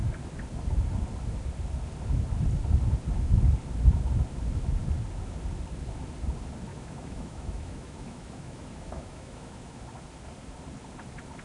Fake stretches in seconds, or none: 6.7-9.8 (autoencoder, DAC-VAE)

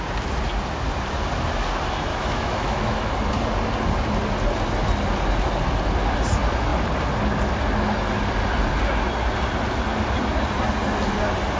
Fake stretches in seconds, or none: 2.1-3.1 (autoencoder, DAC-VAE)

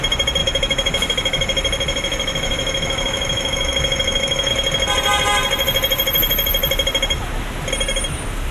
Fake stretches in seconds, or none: 0.4-4.5 (autoencoder, DAC-VAE)